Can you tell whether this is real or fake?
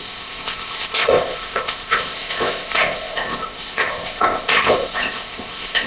fake